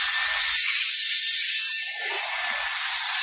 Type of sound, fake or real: real